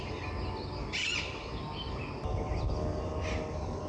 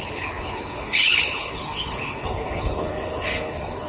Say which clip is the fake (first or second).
second